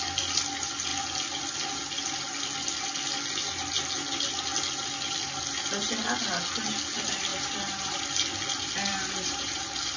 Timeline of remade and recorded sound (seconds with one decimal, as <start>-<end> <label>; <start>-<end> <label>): 0.0-7.3 recorded; 7.3-8.0 remade; 8.0-8.9 recorded; 8.9-9.6 remade; 9.6-10.0 recorded